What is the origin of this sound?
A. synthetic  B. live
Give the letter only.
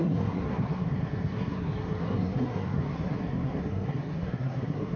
A